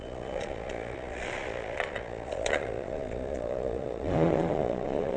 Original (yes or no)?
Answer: no